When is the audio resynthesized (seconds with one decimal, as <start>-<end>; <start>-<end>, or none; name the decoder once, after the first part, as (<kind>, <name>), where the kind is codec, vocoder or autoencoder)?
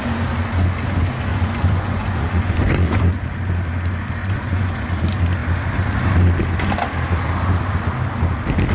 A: 1.3-3.0 (vocoder, Vocos); 4.2-4.9